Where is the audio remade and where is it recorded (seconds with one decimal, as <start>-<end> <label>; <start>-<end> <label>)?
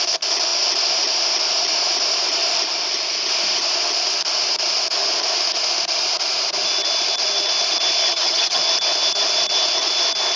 0.0-8.0 recorded; 8.0-8.6 remade; 8.6-10.4 recorded